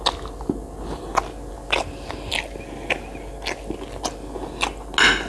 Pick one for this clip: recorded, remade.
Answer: recorded